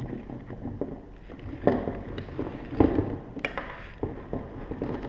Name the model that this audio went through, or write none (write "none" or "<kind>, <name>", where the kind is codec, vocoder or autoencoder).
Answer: none